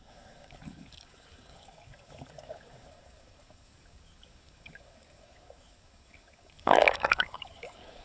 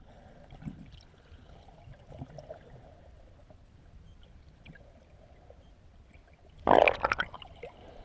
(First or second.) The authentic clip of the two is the second